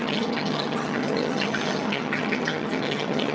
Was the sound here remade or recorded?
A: remade